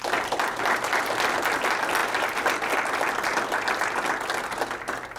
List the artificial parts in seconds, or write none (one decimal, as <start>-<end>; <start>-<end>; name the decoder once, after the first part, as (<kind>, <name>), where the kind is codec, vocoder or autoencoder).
none